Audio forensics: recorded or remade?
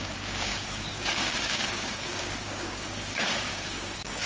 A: remade